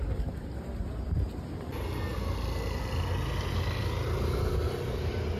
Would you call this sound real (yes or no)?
yes